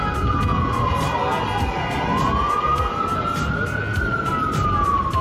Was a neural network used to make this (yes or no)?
no